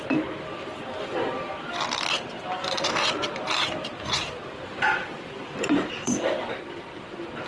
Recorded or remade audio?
remade